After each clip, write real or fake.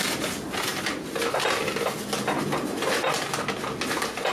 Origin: real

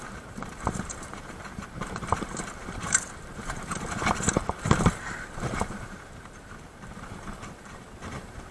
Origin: fake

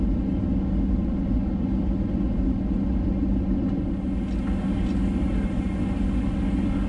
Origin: real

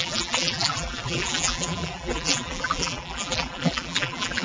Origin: fake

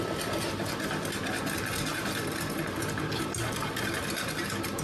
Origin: real